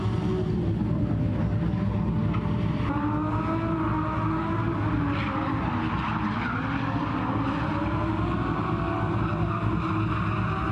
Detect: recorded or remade recorded